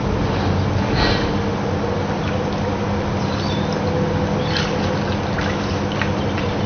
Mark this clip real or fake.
real